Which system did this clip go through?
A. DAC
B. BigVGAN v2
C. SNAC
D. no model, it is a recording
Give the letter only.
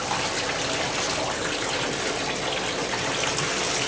D